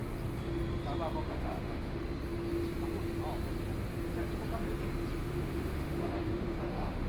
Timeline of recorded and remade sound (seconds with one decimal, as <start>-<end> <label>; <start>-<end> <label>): 0.0-1.3 recorded; 1.3-2.0 remade; 2.0-5.2 recorded; 5.2-7.1 remade